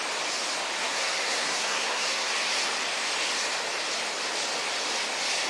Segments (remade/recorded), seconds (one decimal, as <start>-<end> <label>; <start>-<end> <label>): 0.0-0.8 recorded; 0.8-2.3 remade; 2.3-5.5 recorded